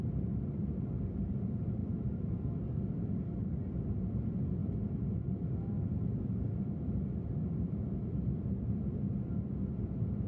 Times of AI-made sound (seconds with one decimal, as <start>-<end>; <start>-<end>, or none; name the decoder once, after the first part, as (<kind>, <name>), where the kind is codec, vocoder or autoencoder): 0.0-1.8 (vocoder, BigVGAN v2); 2.9-10.3